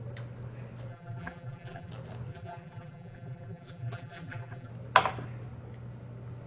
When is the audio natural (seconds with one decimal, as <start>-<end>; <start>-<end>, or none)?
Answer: 0.0-0.9; 1.9-2.3; 4.7-6.5